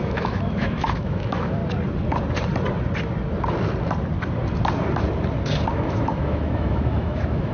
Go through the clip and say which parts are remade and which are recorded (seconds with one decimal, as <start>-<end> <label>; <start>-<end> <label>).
0.0-1.6 remade; 1.6-5.7 recorded; 5.7-7.5 remade